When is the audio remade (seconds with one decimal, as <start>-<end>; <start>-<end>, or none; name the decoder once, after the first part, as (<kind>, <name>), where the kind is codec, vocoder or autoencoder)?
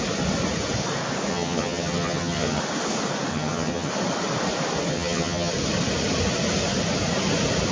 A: 1.3-2.6 (vocoder, HiFi-GAN); 3.3-3.9; 4.9-5.5